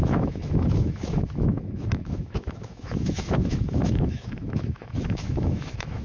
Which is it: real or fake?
fake